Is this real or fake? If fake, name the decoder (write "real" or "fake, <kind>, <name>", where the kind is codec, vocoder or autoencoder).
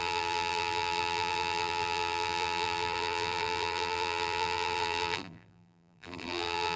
fake, vocoder, BigVGAN v2